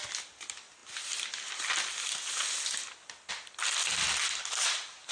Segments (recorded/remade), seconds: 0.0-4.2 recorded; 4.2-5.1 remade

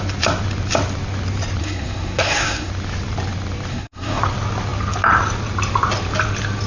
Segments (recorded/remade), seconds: 0.0-1.6 recorded; 1.6-2.7 remade; 2.7-3.7 recorded; 3.7-4.2 remade; 4.2-6.7 recorded

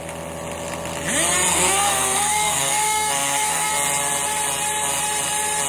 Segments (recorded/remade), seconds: 0.0-1.5 recorded; 1.5-3.7 remade; 3.7-5.7 recorded

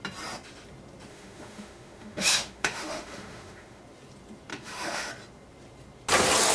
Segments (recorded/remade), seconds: 0.0-1.1 recorded; 1.1-3.8 remade; 3.8-4.5 recorded; 4.5-5.1 remade; 5.1-6.5 recorded